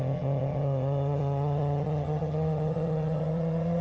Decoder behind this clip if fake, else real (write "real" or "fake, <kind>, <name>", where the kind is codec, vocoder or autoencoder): fake, vocoder, HiFi-GAN